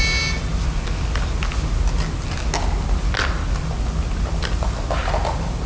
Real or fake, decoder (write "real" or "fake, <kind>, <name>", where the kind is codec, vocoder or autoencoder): real